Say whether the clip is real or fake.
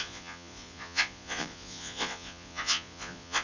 fake